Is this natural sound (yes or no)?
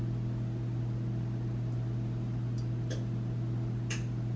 yes